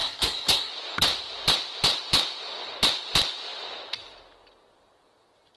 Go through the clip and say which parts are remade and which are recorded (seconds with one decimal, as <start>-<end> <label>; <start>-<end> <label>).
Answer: 0.0-0.7 remade; 0.7-5.6 recorded